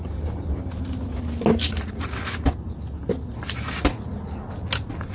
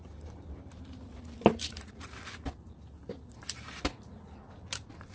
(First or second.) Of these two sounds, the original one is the first